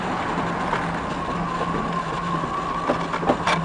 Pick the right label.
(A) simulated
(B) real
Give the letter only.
B